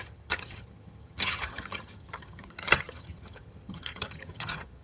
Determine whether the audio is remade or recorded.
remade